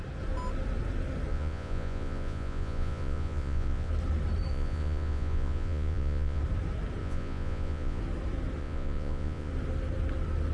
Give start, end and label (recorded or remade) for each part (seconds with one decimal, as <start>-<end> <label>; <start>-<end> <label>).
0.0-1.3 recorded; 1.3-3.9 remade; 3.9-4.5 recorded; 4.5-6.4 remade; 6.4-7.0 recorded; 7.0-8.0 remade; 8.0-8.6 recorded; 8.6-9.5 remade; 9.5-10.5 recorded